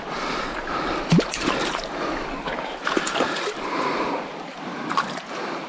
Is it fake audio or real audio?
real